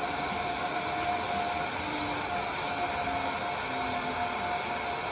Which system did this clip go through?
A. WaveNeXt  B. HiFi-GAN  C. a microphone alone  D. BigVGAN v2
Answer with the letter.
C